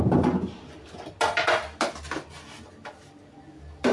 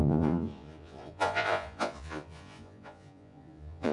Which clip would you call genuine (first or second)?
first